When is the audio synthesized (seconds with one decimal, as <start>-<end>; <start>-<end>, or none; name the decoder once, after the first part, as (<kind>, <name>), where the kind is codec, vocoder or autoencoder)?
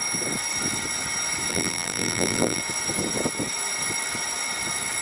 1.5-2.6 (vocoder, BigVGAN v2)